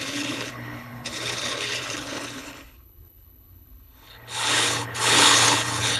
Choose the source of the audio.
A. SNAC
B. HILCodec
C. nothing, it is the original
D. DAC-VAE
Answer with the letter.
B